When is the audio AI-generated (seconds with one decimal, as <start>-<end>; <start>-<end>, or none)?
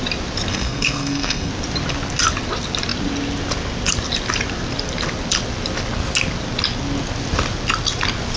0.5-1.5